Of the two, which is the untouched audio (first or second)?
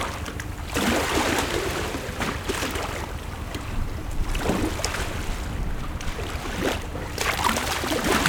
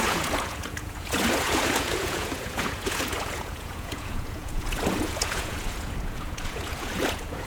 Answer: first